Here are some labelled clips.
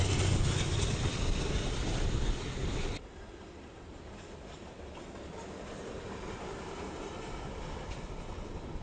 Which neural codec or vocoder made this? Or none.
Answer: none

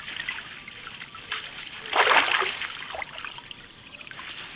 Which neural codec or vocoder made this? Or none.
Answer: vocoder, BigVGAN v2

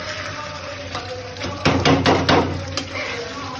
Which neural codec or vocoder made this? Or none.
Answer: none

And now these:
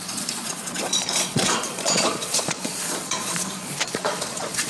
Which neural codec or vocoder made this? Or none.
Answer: vocoder, Vocos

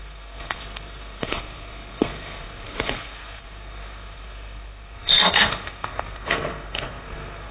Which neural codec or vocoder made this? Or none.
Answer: codec, SNAC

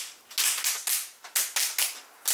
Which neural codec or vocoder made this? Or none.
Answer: none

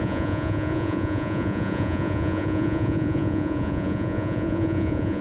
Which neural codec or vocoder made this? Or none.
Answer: vocoder, Vocos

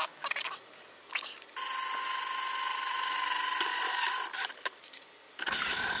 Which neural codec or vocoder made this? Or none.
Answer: none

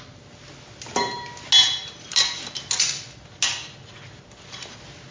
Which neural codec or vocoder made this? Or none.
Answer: none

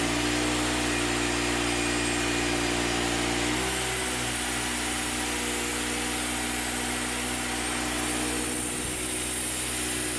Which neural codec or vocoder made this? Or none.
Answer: none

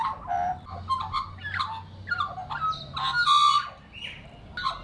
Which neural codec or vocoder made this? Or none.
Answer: none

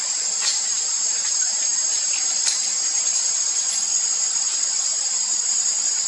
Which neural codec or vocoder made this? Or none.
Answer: none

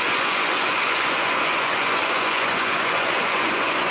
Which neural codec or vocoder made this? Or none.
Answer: vocoder, Vocos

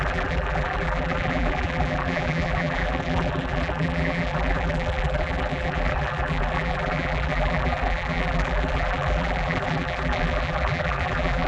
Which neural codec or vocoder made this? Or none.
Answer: vocoder, BigVGAN v2